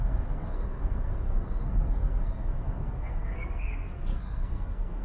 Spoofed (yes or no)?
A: yes